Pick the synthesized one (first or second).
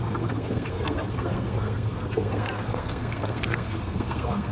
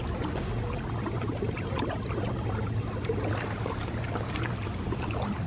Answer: first